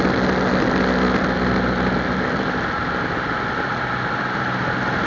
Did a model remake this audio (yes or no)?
no